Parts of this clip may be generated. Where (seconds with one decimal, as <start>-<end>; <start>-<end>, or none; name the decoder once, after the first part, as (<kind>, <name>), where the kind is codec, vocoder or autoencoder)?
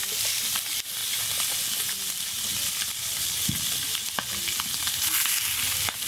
none